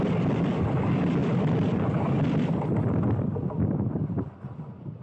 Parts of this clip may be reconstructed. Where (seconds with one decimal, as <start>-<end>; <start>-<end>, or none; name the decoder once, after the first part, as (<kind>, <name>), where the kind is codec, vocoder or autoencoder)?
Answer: none